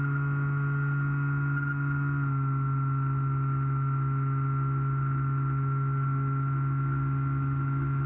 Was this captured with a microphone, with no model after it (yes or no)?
yes